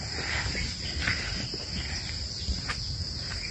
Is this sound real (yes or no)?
yes